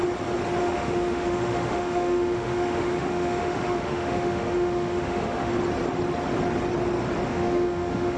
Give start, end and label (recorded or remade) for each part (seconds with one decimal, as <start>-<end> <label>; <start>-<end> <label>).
0.0-0.6 recorded; 0.6-5.5 remade; 5.5-7.3 recorded; 7.3-8.2 remade